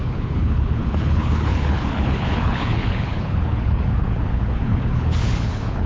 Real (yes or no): no